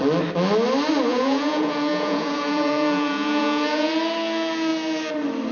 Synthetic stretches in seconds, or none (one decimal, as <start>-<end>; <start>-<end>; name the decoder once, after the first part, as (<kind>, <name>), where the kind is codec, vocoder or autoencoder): 1.1-3.9 (vocoder, Vocos)